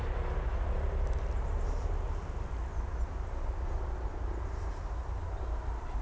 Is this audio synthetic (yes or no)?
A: no